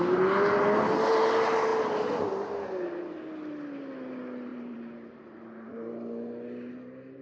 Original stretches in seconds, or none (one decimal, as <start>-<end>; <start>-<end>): 0.0-4.5; 5.4-7.2